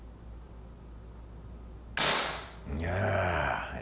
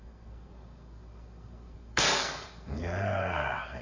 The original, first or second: first